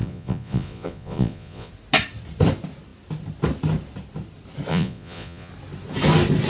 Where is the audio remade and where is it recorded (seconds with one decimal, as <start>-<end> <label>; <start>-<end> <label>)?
0.0-1.7 remade; 1.7-4.7 recorded; 4.7-5.5 remade; 5.5-6.5 recorded

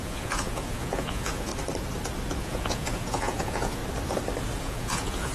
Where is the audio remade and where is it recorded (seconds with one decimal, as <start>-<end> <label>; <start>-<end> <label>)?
0.0-1.5 remade; 1.5-2.4 recorded; 2.4-3.8 remade; 3.8-4.6 recorded; 4.6-5.3 remade